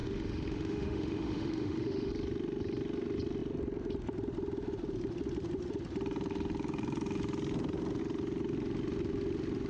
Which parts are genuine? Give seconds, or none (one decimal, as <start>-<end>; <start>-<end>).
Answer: 2.1-9.7